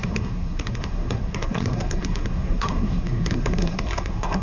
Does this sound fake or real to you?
fake